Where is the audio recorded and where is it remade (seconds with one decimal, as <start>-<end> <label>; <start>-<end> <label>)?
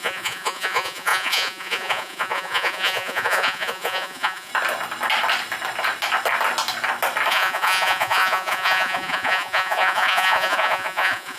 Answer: 0.0-4.5 remade; 4.5-7.3 recorded; 7.3-11.4 remade